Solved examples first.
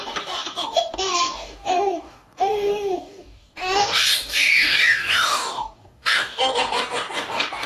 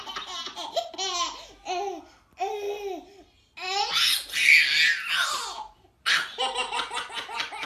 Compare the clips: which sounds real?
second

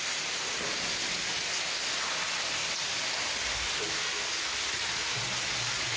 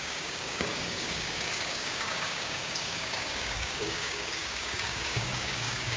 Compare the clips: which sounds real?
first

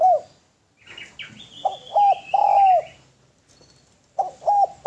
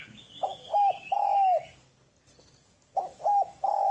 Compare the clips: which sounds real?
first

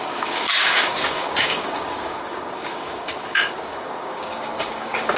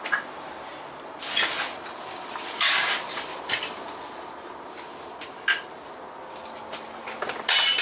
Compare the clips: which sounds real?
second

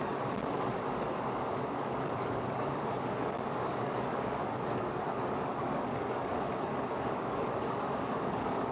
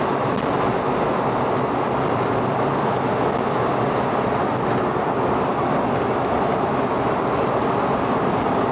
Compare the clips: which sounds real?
second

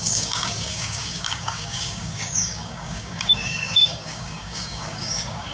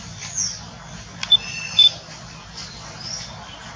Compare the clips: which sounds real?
second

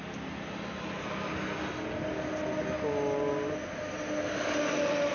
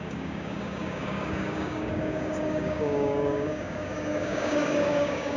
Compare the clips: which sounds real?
first